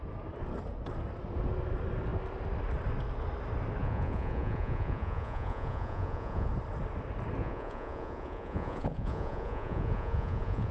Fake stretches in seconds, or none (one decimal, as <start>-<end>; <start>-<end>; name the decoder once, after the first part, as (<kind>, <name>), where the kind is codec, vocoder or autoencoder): 3.8-6.5 (vocoder, Vocos); 7.4-10.7